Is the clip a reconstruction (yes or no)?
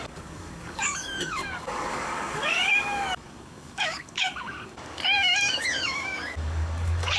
yes